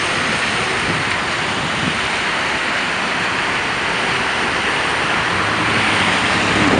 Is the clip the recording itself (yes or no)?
yes